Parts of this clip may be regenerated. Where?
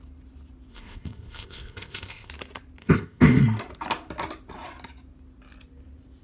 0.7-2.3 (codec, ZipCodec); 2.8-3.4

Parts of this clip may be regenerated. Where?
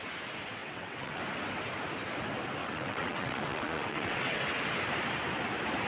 0.6-1.2 (vocoder, WaveNeXt); 2.6-4.4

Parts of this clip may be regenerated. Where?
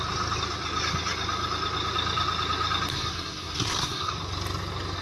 2.9-4.1 (codec, SNAC)